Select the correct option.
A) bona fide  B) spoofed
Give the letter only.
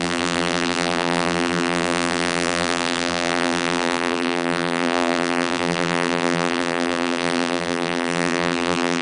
B